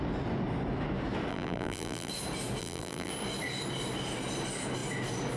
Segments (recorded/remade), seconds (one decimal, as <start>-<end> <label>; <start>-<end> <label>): 0.0-1.3 recorded; 1.3-2.1 remade; 2.1-2.6 recorded; 2.6-3.1 remade; 3.1-5.4 recorded